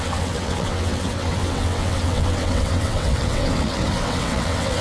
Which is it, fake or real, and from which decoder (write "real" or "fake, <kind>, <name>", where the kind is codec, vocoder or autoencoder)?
fake, vocoder, WaveNeXt